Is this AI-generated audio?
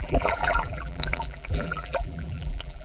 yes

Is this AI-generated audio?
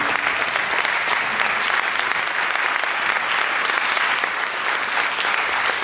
no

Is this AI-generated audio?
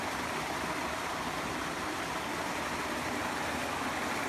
no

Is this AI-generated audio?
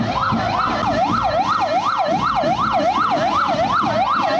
no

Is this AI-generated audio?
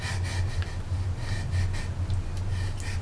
no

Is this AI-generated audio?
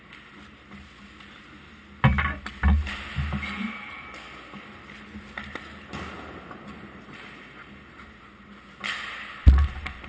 no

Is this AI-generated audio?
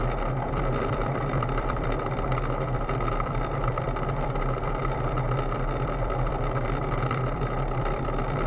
yes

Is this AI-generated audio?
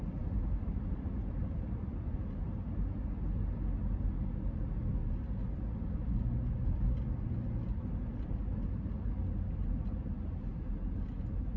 no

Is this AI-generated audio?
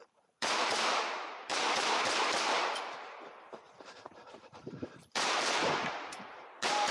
yes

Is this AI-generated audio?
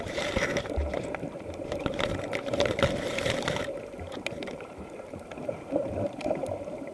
yes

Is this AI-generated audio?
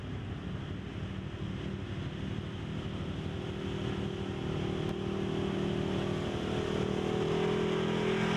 no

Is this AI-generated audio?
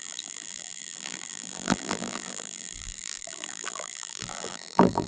yes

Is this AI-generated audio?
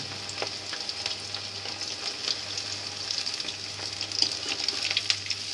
no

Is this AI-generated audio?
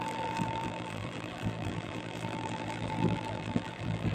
yes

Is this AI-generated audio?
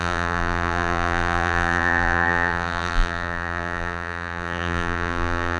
yes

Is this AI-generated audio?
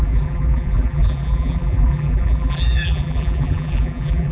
yes